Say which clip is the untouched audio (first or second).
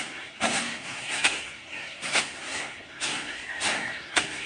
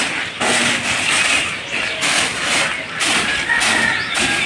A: second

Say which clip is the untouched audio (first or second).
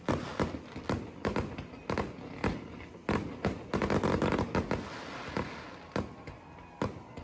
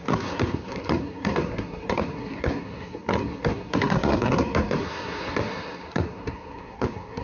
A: first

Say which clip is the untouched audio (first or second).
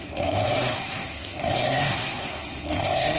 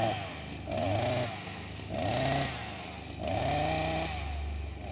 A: second